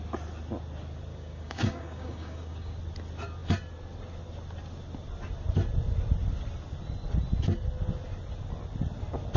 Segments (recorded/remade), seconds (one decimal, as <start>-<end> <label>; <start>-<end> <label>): 0.0-1.1 recorded; 1.1-2.7 remade; 2.7-9.4 recorded